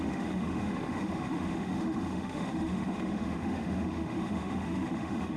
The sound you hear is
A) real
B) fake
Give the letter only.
B